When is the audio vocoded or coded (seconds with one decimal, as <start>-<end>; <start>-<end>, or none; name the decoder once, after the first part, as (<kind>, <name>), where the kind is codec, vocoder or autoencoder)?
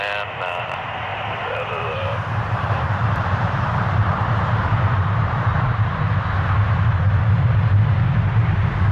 1.1-5.8 (vocoder, BigVGAN v2)